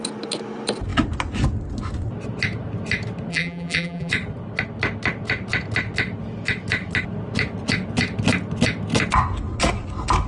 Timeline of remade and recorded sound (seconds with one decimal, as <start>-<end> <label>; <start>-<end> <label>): 0.0-3.3 recorded; 3.3-4.1 remade; 4.1-10.3 recorded